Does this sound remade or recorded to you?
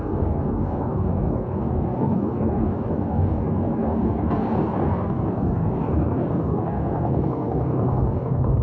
remade